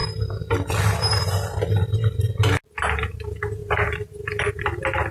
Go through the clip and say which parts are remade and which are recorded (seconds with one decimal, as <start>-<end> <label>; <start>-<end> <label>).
0.0-5.1 recorded